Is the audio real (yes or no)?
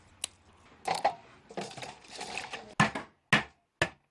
yes